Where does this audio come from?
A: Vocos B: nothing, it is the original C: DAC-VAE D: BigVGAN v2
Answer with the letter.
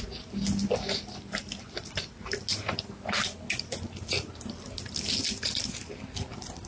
B